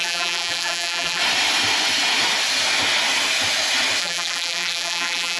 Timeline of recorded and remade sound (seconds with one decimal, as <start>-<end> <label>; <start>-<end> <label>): 0.0-1.2 remade; 1.2-4.0 recorded; 4.0-5.4 remade

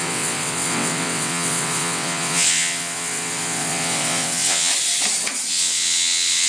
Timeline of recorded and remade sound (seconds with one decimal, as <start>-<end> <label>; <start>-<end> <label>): 0.0-4.7 remade; 4.7-5.5 recorded; 5.5-6.5 remade

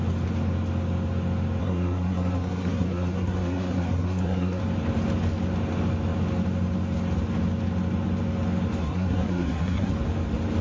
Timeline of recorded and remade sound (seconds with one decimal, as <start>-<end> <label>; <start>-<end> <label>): 0.0-1.6 recorded; 1.6-4.6 remade; 4.6-8.8 recorded; 8.8-9.9 remade; 9.9-10.6 recorded

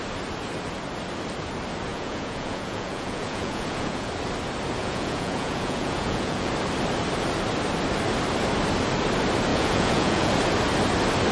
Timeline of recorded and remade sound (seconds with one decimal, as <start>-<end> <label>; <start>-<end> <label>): 0.0-1.9 recorded; 1.9-4.1 remade; 4.1-4.8 recorded; 4.8-6.5 remade; 6.5-9.5 recorded; 9.5-10.3 remade; 10.3-11.3 recorded

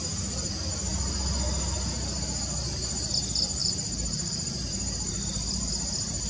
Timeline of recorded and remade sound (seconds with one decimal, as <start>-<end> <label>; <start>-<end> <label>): 0.0-3.6 recorded; 3.6-5.7 remade; 5.7-6.3 recorded

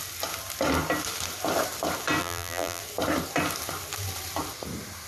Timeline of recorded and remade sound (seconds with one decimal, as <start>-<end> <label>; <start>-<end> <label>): 0.0-2.2 recorded; 2.2-2.8 remade; 2.8-5.1 recorded